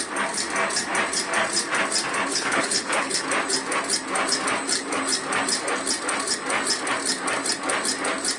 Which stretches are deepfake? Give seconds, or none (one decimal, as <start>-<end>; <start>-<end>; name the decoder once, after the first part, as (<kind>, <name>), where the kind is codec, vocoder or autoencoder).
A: 2.3-3.2 (codec, HILCodec)